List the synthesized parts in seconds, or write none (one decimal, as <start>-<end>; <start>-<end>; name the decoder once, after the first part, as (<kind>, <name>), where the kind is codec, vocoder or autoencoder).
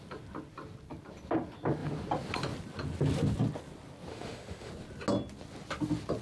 4.1-4.7 (autoencoder, DAC-VAE)